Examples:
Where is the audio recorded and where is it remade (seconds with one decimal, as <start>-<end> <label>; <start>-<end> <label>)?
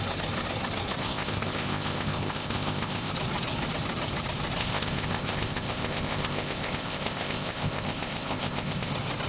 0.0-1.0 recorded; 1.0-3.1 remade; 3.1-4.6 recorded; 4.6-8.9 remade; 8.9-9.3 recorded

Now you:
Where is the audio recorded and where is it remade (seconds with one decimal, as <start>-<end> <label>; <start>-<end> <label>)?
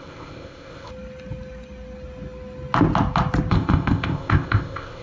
0.0-0.9 remade; 0.9-3.5 recorded; 3.5-5.0 remade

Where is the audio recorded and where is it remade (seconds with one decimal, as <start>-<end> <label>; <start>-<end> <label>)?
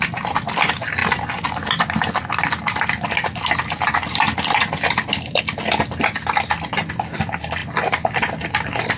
0.0-9.0 recorded